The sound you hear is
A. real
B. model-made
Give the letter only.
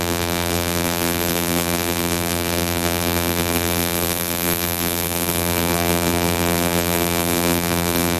B